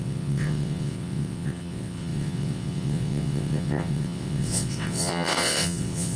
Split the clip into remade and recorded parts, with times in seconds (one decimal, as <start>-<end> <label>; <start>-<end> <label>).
0.0-6.2 remade